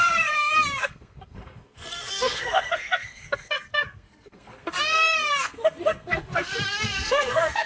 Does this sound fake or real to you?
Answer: fake